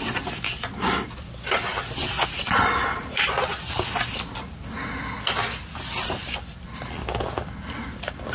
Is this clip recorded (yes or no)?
yes